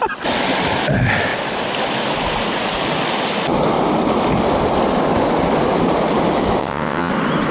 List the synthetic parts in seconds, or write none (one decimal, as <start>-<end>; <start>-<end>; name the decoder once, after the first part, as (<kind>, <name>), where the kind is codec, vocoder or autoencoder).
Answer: 6.6-7.1 (vocoder, WaveNeXt)